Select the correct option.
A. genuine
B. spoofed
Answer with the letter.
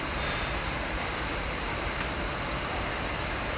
A